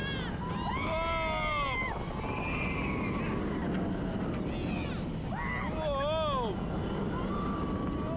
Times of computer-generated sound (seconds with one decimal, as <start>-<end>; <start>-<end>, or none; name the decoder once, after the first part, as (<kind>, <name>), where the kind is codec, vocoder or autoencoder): none